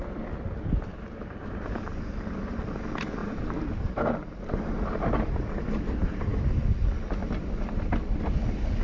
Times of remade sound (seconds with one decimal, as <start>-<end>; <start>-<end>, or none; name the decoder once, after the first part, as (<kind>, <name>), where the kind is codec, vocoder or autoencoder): 0.9-2.1 (vocoder, BigVGAN v2); 3.2-5.3